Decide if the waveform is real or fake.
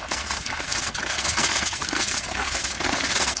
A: fake